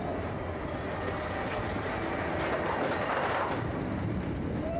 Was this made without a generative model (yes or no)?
yes